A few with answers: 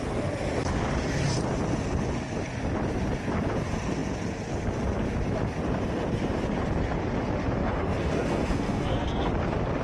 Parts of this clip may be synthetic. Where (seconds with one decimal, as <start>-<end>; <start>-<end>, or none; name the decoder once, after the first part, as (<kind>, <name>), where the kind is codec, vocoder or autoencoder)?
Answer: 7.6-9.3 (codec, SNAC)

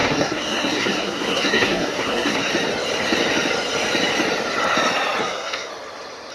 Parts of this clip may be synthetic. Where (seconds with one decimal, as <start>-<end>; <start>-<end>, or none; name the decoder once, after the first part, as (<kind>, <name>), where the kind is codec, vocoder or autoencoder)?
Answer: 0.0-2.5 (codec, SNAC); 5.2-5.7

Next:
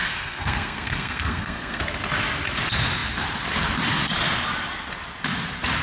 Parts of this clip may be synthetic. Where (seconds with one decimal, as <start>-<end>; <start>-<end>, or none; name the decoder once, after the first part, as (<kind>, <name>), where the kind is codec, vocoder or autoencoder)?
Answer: 0.0-1.8 (codec, SNAC)

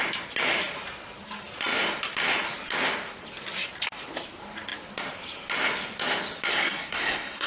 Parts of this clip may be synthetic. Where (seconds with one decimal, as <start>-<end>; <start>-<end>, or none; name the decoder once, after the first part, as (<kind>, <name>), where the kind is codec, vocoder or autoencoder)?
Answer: 6.5-7.5 (codec, SNAC)